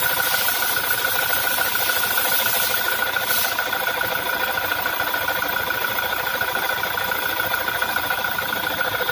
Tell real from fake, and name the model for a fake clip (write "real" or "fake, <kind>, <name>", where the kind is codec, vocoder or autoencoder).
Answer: real